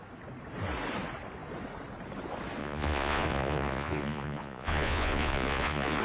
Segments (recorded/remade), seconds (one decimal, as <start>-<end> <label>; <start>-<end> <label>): 0.0-2.6 recorded; 2.6-6.0 remade